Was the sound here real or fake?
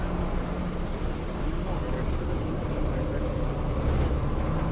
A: real